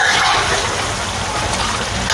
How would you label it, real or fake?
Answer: real